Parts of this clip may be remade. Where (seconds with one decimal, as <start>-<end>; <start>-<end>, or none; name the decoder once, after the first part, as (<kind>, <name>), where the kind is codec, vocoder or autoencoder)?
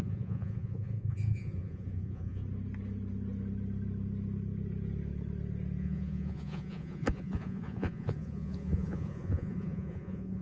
0.0-2.4 (vocoder, Vocos); 5.8-10.4